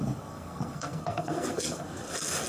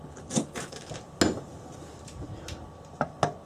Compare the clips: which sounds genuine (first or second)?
second